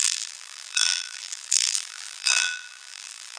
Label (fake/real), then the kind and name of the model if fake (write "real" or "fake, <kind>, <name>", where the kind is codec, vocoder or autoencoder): fake, vocoder, BigVGAN v2